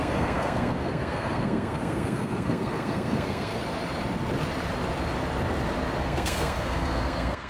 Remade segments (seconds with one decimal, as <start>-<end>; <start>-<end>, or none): 0.0-3.6; 6.0-7.5